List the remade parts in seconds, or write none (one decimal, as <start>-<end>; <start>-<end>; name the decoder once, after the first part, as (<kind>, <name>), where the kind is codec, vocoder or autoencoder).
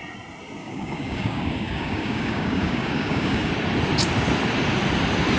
0.6-3.5 (codec, DAC)